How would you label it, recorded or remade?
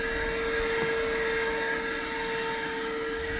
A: recorded